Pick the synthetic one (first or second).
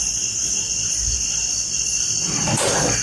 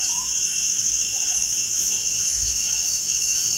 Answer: second